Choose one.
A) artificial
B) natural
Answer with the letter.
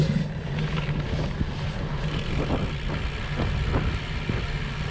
B